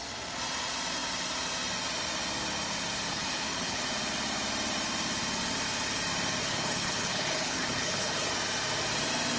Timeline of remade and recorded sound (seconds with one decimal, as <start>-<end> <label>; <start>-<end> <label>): 0.0-3.1 recorded; 3.1-3.8 remade; 3.8-6.4 recorded; 6.4-8.3 remade; 8.3-9.4 recorded